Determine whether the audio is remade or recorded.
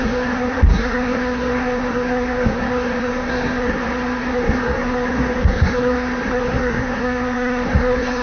remade